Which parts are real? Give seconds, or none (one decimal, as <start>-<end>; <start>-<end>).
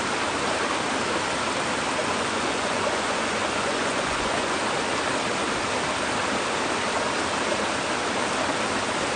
0.0-2.0; 4.6-9.2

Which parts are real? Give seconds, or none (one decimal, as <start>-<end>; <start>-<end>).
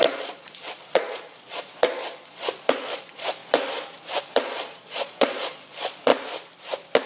3.4-4.2; 6.1-7.1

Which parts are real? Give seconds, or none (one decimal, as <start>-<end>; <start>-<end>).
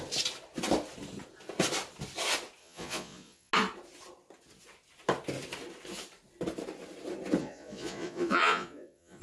0.0-2.6; 3.5-7.4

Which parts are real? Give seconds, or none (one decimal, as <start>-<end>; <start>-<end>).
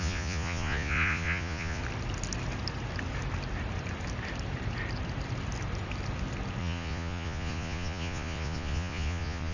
1.8-6.6